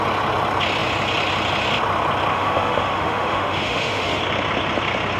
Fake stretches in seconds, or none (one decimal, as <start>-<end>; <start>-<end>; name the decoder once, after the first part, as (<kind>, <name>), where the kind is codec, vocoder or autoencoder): 2.3-4.2 (autoencoder, DAC-VAE)